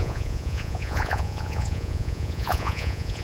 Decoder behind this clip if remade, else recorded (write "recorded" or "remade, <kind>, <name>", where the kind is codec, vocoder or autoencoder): remade, vocoder, Vocos